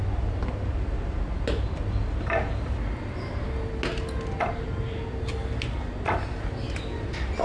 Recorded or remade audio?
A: recorded